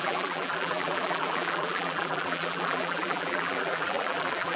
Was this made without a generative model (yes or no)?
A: no